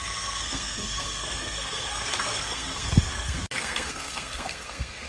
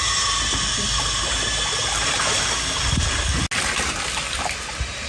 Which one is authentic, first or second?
second